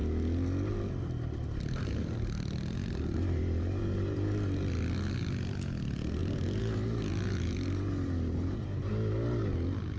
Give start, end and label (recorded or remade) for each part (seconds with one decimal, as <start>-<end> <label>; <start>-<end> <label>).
0.0-2.8 recorded; 2.8-4.6 remade; 4.6-6.2 recorded; 6.2-8.9 remade; 8.9-10.0 recorded